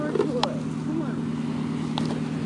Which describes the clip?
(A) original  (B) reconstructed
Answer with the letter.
A